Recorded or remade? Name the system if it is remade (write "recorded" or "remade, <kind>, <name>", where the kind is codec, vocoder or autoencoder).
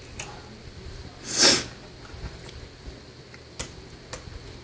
recorded